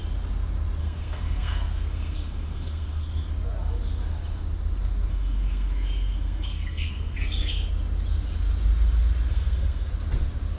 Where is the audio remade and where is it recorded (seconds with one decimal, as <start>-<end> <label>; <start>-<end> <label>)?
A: 0.0-0.8 recorded; 0.8-3.3 remade; 3.3-5.1 recorded; 5.1-7.7 remade; 7.7-9.3 recorded; 9.3-9.9 remade; 9.9-10.6 recorded